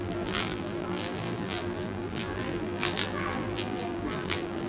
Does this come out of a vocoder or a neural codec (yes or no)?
yes